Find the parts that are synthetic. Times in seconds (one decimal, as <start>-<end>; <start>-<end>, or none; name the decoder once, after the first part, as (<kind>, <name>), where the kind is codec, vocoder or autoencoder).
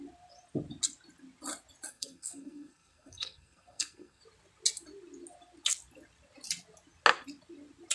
1.9-4.2 (codec, SNAC)